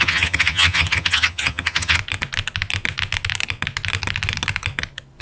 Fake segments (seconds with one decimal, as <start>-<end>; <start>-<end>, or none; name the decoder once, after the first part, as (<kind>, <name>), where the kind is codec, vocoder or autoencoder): 0.0-2.0 (vocoder, HiFi-GAN)